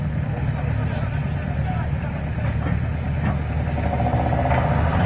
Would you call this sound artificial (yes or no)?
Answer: no